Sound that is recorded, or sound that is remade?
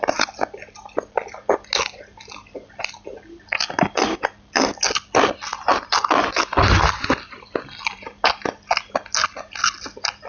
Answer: recorded